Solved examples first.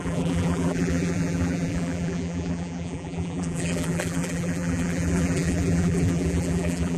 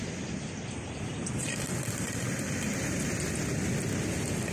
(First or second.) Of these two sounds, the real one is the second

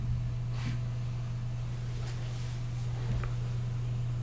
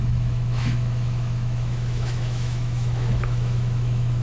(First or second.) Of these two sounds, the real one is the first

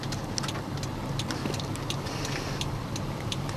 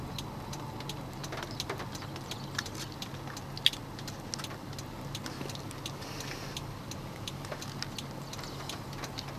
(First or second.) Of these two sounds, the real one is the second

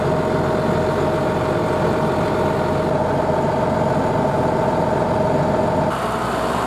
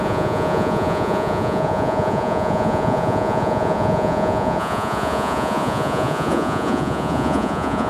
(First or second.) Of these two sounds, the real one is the first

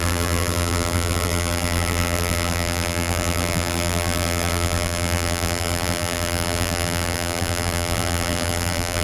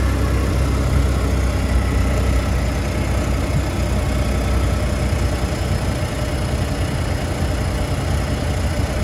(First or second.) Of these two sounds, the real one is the second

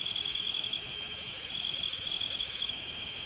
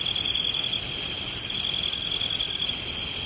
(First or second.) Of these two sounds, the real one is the second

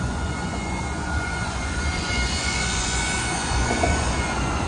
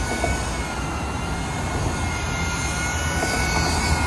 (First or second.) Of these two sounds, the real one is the second